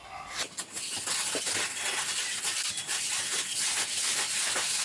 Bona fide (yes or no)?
yes